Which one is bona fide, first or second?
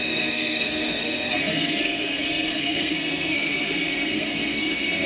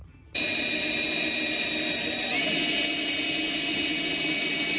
second